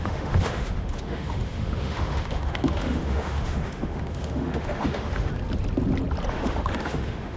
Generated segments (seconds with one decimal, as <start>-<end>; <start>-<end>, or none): 0.0-5.3; 6.3-7.4